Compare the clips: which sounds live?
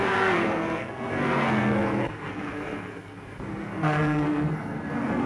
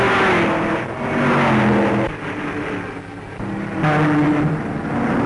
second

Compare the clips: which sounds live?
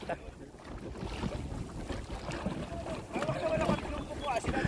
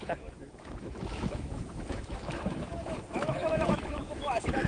first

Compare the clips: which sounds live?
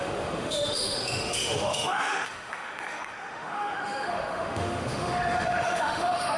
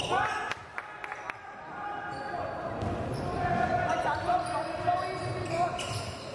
second